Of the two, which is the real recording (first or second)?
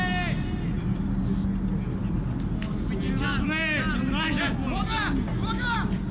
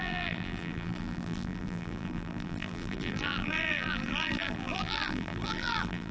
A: first